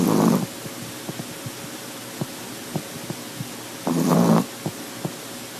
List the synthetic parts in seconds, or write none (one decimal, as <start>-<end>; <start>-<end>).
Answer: none